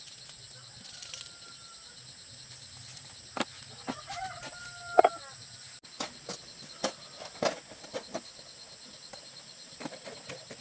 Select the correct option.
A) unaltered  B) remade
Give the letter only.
A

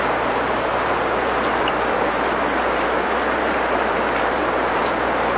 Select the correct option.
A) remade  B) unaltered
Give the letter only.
A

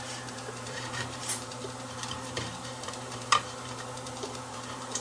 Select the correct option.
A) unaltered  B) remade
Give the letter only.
B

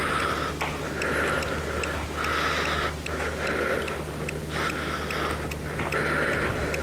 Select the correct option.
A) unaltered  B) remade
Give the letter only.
A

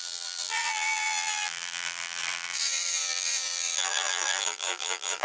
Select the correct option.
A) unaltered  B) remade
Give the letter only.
B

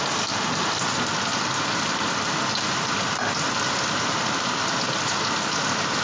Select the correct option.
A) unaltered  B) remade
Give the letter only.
A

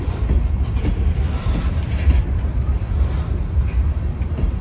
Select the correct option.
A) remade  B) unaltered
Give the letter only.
A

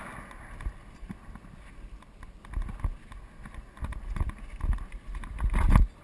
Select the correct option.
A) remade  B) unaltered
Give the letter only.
B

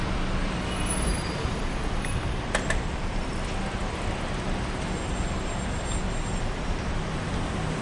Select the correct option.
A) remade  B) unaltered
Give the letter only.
A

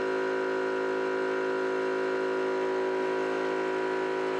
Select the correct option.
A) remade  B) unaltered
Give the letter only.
B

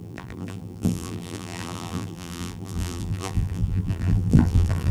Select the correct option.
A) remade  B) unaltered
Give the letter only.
A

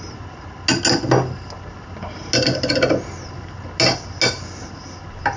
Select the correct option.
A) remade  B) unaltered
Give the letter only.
B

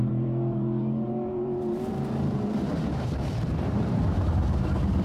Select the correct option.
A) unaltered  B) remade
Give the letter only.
B